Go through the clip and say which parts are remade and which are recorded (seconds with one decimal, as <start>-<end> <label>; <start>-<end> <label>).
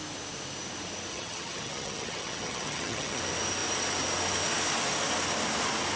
0.0-1.1 recorded; 1.1-3.2 remade; 3.2-6.0 recorded